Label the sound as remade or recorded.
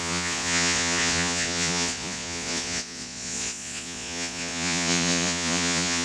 remade